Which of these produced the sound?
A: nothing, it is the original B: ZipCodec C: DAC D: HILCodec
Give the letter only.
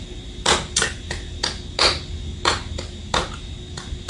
A